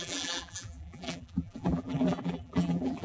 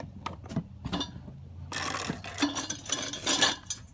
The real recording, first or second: second